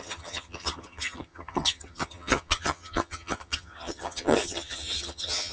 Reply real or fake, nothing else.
fake